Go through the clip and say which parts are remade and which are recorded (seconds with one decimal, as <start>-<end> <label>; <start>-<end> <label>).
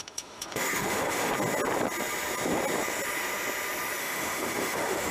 0.0-1.3 remade; 1.3-4.0 recorded; 4.0-5.1 remade